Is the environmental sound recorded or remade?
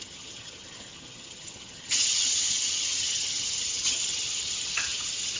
remade